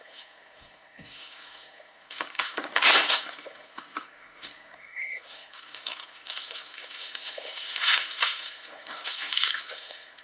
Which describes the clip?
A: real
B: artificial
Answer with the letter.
B